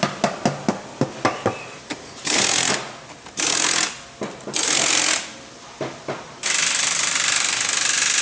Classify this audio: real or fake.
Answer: real